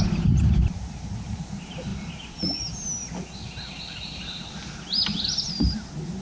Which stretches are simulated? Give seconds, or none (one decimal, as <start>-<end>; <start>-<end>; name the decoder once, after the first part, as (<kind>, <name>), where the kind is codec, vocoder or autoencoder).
none